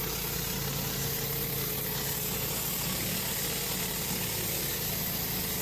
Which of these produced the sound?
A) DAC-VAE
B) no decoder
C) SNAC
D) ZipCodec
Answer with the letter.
B